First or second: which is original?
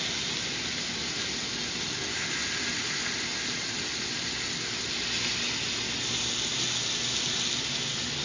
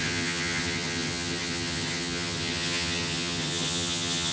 first